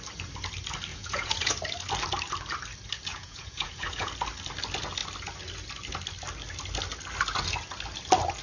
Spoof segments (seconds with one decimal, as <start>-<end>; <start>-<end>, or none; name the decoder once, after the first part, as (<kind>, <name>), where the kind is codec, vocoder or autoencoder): 0.9-1.5 (vocoder, Vocos); 3.1-4.1